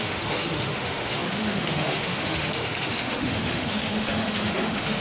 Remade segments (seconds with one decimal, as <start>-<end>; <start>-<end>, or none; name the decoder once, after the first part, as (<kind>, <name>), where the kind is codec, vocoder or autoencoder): 0.0-5.0 (autoencoder, DAC-VAE)